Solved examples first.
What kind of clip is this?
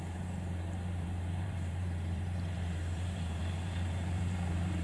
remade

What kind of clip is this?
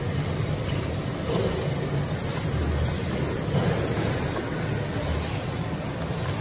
recorded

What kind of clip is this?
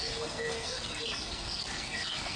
remade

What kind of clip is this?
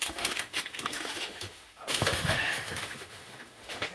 remade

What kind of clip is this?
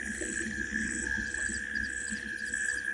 recorded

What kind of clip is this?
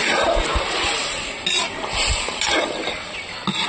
recorded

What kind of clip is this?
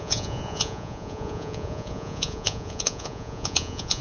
remade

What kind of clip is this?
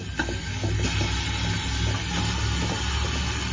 recorded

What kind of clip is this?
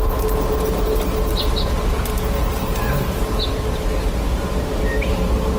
recorded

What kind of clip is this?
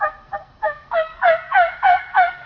remade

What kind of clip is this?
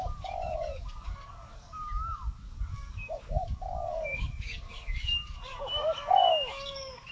remade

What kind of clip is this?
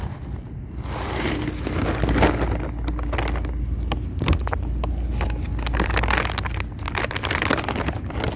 recorded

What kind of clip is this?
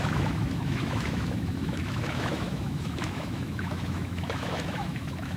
remade